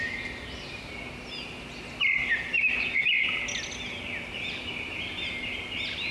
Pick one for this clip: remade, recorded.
recorded